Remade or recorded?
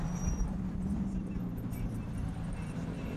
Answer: remade